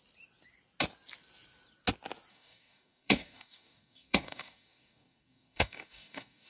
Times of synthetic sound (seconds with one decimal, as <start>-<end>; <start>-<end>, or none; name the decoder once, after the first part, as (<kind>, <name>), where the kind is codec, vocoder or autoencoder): 2.3-6.5 (codec, DAC)